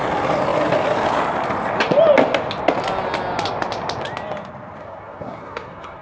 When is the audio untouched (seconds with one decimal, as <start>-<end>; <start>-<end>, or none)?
0.0-4.8